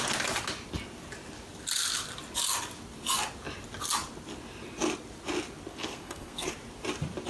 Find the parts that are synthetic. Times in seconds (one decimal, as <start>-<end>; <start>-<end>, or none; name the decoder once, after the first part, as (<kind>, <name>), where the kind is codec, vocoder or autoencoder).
5.7-6.5 (codec, SNAC)